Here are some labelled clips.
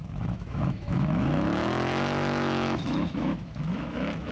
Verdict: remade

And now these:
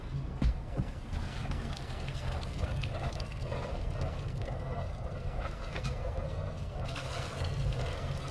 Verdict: remade